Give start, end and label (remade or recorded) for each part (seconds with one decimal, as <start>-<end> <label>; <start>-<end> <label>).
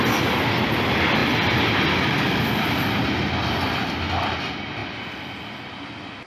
0.0-6.3 recorded